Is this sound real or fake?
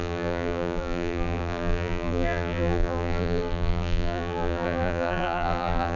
fake